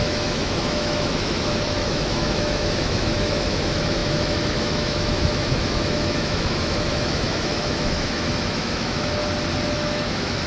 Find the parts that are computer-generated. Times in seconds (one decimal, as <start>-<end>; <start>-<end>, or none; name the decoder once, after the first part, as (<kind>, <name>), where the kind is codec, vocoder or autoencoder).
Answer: 0.0-9.2 (autoencoder, DAC-VAE); 9.7-10.5